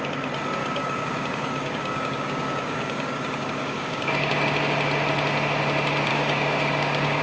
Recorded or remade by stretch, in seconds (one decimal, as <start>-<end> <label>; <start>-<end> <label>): 0.0-0.6 recorded; 0.6-4.3 remade; 4.3-6.1 recorded; 6.1-7.2 remade